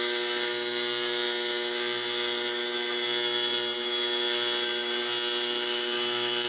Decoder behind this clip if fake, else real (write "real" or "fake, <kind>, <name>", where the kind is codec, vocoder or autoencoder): fake, autoencoder, DAC-VAE